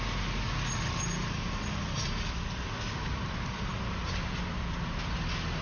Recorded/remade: recorded